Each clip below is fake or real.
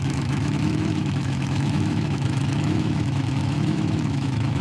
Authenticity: fake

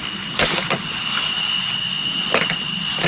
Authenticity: real